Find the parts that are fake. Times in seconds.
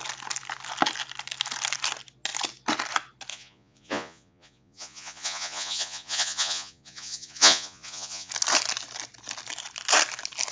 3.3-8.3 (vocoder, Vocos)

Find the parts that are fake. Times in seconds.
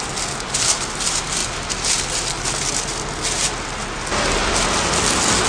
none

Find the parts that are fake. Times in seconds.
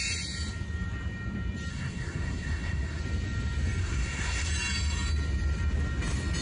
1.7-3.0 (codec, SNAC); 3.8-4.5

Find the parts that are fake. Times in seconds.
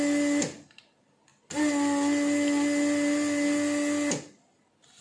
none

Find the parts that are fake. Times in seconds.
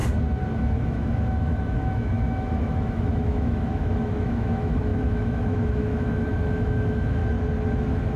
0.6-7.2 (autoencoder, DAC-VAE); 7.7-8.2